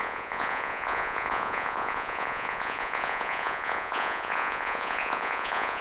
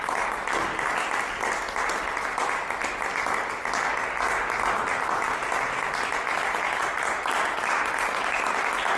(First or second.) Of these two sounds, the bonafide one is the second